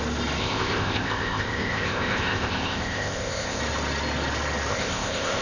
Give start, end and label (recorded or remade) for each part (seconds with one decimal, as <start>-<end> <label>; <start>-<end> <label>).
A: 0.0-0.4 recorded; 0.4-3.6 remade; 3.6-4.7 recorded; 4.7-5.4 remade

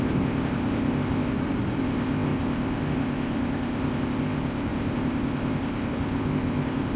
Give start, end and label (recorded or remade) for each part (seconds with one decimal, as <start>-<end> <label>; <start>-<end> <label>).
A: 0.0-1.3 remade; 1.3-1.8 recorded; 1.8-7.0 remade